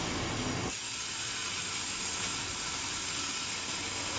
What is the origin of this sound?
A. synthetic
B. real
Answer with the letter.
B